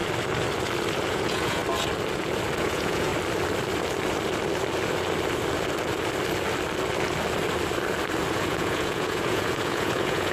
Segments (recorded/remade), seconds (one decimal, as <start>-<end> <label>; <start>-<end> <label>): 0.0-1.1 recorded; 1.1-1.6 remade; 1.6-2.6 recorded; 2.6-3.1 remade; 3.1-8.3 recorded; 8.3-10.3 remade